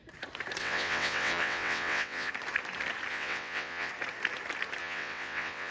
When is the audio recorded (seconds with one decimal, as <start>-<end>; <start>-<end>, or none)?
0.0-0.6; 2.3-3.1; 3.9-4.8